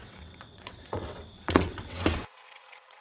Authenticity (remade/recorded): remade